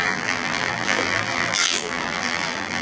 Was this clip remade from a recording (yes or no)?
yes